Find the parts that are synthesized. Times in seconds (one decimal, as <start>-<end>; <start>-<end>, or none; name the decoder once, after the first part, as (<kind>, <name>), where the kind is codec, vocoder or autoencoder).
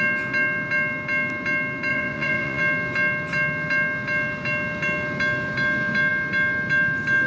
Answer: 1.9-2.6 (vocoder, Vocos)